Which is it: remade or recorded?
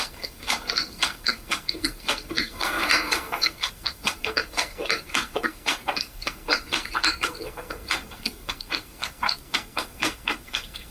remade